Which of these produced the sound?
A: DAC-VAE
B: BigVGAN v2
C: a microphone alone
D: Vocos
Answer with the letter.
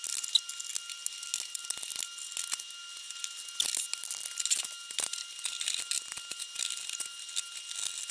C